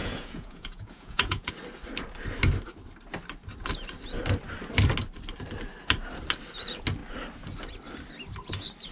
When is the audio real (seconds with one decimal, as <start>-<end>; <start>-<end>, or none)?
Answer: 1.5-8.9

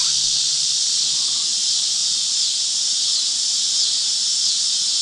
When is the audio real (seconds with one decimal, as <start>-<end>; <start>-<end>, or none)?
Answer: 0.0-5.0